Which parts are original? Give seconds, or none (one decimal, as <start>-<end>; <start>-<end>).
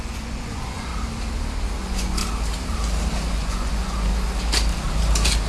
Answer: 0.9-1.8; 2.2-3.3; 4.1-5.5